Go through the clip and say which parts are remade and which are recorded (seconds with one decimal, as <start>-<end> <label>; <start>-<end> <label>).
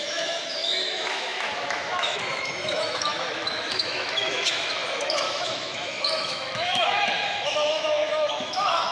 0.0-8.9 remade